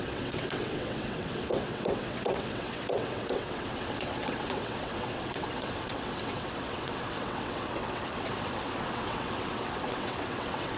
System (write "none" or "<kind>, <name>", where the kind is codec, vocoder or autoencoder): vocoder, WaveNeXt